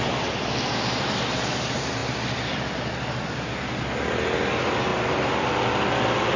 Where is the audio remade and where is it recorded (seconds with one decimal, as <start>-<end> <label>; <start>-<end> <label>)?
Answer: 0.0-2.0 remade; 2.0-4.5 recorded; 4.5-4.9 remade; 4.9-6.4 recorded